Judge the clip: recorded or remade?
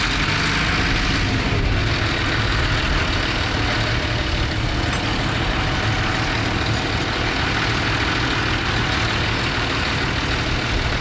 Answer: recorded